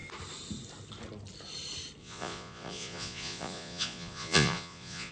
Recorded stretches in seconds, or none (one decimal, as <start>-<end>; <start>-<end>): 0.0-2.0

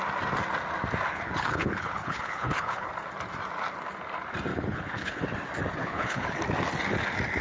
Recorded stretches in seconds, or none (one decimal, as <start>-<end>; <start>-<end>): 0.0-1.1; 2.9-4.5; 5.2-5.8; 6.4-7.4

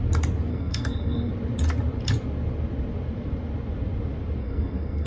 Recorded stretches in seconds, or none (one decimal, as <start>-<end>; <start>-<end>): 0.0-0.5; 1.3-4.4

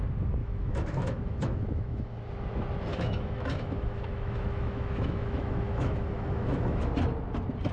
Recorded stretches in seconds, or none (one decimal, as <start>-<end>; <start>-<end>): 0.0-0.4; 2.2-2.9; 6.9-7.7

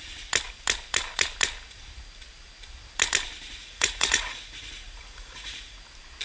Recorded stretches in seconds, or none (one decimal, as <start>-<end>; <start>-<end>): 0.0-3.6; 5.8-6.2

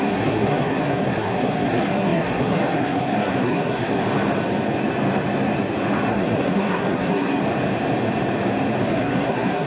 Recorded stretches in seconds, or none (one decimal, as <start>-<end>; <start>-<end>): 4.0-6.1; 7.4-8.8

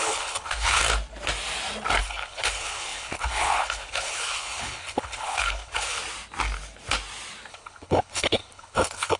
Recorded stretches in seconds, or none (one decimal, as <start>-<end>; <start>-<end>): 0.8-2.0; 6.0-7.5

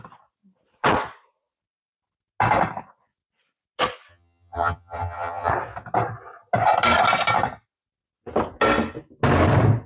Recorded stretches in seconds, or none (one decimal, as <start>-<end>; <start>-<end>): 0.0-4.1; 5.5-9.9